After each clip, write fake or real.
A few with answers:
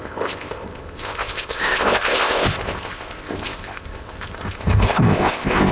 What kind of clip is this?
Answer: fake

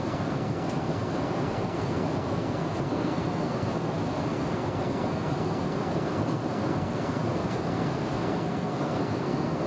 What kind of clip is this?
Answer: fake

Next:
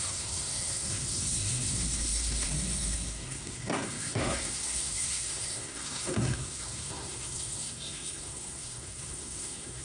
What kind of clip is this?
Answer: fake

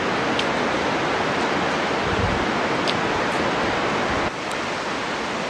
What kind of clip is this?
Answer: real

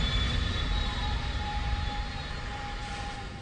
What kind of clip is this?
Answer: fake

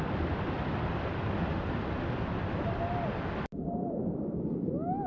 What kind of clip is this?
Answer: real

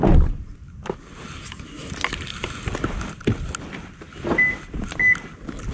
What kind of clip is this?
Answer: real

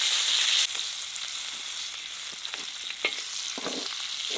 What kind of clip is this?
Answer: real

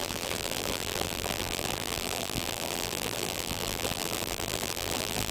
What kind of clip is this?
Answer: fake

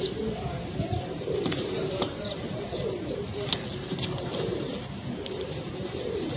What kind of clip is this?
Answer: fake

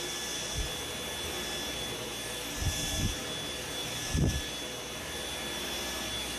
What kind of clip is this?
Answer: real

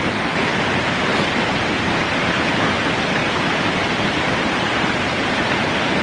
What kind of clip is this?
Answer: fake